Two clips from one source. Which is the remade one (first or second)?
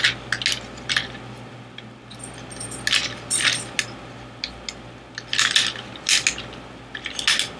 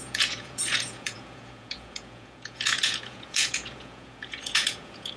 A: second